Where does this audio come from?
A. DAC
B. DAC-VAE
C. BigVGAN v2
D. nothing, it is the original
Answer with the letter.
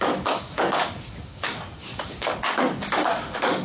A